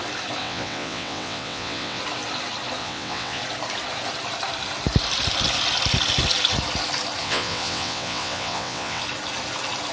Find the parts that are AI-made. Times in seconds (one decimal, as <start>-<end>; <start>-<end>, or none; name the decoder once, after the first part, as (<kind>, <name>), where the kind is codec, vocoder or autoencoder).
0.4-2.0 (vocoder, WaveNeXt); 2.8-3.4; 7.2-9.0